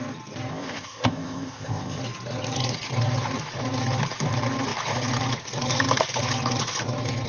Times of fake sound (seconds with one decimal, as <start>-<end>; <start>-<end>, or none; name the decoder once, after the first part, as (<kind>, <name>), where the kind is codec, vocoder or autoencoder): 0.5-2.0 (codec, ZipCodec)